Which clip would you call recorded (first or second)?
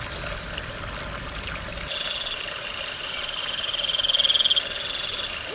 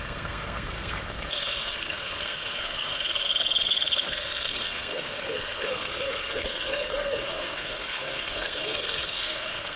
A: first